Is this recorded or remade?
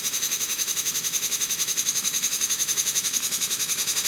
remade